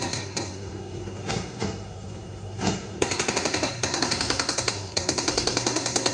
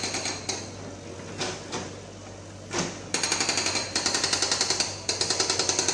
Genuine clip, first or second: second